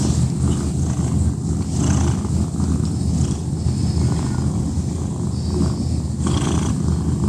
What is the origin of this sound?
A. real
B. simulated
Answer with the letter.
A